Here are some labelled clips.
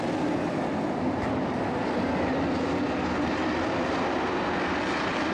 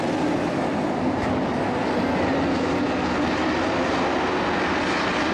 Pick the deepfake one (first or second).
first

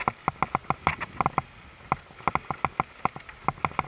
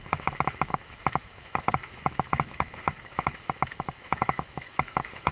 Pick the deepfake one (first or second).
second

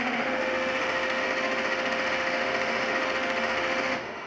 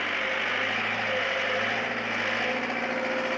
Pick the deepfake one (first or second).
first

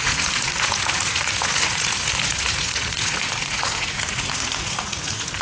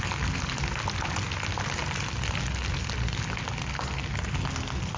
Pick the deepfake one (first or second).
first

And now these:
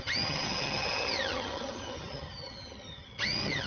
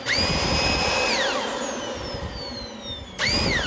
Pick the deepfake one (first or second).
first